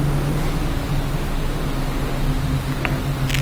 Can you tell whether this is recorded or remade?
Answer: recorded